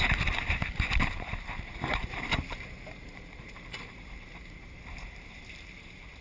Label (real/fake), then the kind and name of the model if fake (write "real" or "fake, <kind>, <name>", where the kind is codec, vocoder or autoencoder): fake, vocoder, BigVGAN v2